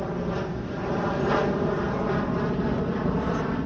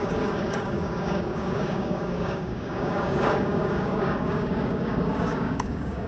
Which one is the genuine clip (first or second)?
first